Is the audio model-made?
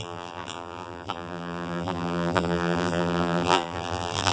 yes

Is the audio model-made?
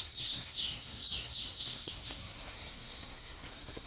yes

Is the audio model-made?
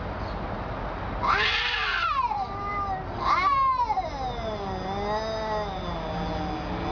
no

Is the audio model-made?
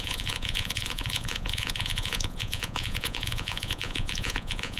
yes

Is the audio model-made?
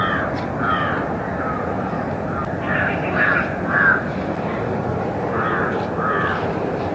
no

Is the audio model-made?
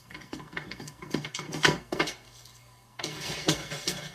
yes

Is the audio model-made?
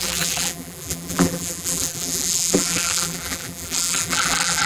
yes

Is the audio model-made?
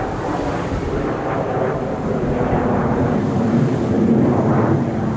no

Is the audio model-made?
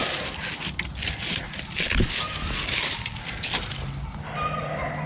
no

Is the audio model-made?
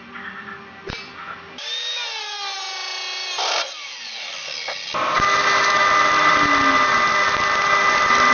no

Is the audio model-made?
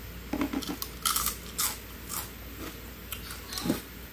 no